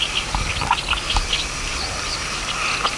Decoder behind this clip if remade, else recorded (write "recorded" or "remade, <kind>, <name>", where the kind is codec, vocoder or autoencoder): recorded